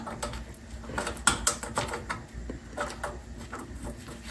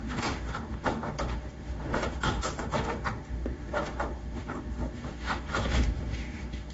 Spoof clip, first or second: second